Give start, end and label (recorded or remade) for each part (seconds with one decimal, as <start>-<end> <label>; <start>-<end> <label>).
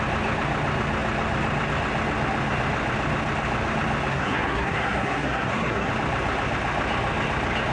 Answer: 0.0-4.1 recorded; 4.1-5.9 remade; 5.9-7.7 recorded